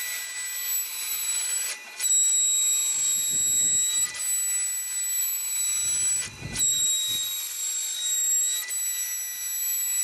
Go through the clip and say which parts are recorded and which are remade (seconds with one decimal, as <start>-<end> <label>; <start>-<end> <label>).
0.0-1.1 recorded; 1.1-2.1 remade; 2.1-10.0 recorded